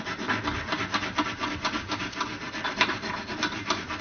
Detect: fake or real real